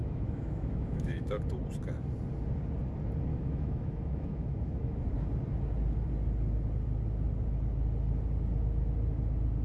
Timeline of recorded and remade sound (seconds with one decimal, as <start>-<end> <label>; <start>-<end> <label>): 0.0-1.4 remade; 1.4-3.3 recorded; 3.3-5.0 remade; 5.0-9.6 recorded